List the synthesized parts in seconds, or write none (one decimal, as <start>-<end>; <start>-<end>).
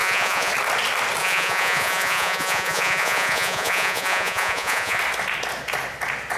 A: 0.0-0.5; 1.2-5.0